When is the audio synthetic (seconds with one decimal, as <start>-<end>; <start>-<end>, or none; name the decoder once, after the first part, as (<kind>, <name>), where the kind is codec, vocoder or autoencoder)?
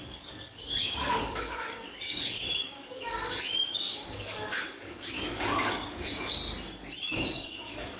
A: 0.0-6.4 (codec, DAC); 7.1-8.0